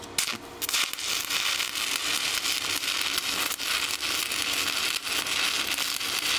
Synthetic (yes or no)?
no